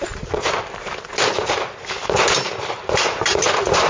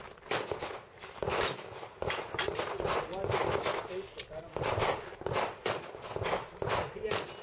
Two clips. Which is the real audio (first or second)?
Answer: second